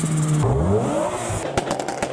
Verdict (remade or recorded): recorded